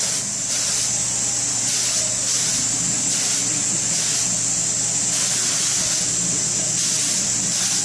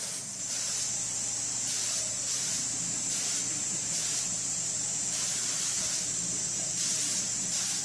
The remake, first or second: second